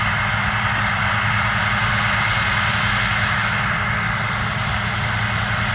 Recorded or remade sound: recorded